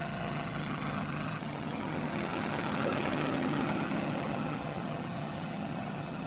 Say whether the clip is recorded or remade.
remade